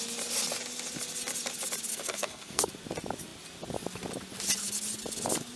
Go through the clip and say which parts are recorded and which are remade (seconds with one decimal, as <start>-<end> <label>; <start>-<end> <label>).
0.0-1.9 recorded; 1.9-2.7 remade; 2.7-5.6 recorded

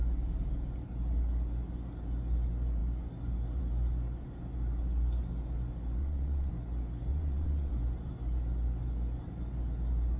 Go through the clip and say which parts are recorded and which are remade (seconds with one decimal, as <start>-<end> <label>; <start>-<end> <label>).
0.0-6.0 recorded; 6.0-6.5 remade; 6.5-7.1 recorded; 7.1-7.7 remade; 7.7-10.2 recorded

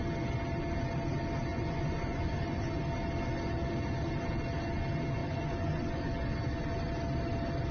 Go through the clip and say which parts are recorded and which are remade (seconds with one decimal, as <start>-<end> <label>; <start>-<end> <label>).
0.0-1.5 recorded; 1.5-2.8 remade; 2.8-5.2 recorded; 5.2-6.1 remade; 6.1-7.7 recorded

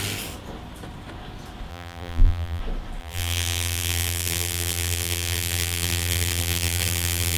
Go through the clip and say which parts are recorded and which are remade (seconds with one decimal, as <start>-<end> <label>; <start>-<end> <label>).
0.0-1.7 recorded; 1.7-2.6 remade; 2.6-3.0 recorded; 3.0-7.4 remade

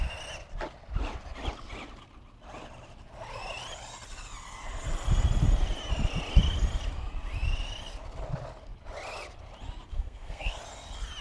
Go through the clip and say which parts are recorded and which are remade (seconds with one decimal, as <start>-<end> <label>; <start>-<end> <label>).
0.0-9.9 recorded; 9.9-10.6 remade; 10.6-11.2 recorded

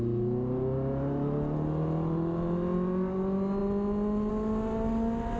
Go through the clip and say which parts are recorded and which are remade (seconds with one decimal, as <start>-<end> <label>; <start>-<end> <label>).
0.0-5.4 recorded

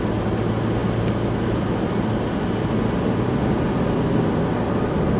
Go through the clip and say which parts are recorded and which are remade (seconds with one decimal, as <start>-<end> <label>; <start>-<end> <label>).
0.0-5.2 recorded

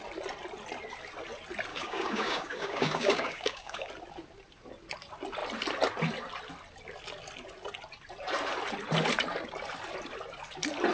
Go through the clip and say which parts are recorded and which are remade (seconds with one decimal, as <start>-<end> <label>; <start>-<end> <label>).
0.0-1.7 recorded; 1.7-3.9 remade; 3.9-10.9 recorded